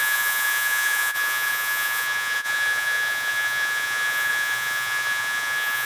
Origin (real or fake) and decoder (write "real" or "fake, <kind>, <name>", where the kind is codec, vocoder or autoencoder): fake, vocoder, Vocos